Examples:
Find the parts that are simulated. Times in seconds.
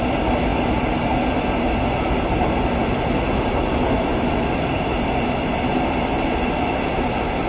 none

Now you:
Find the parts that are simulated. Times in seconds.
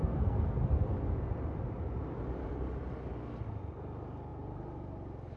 0.0-0.6 (codec, SNAC)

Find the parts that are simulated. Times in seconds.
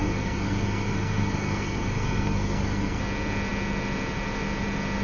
0.0-3.0 (codec, SNAC)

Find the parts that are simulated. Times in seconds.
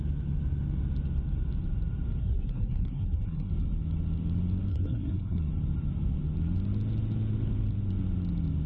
2.2-3.5 (codec, SNAC); 4.7-5.5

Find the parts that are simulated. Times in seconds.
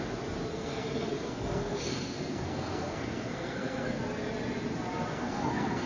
0.5-4.0 (codec, SNAC); 5.1-5.9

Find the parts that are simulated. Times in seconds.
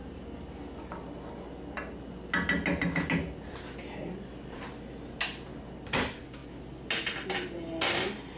none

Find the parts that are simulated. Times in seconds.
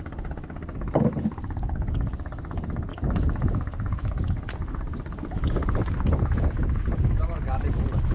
none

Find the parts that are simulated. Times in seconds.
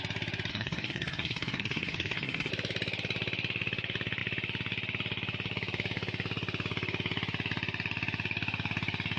0.5-2.5 (codec, SNAC)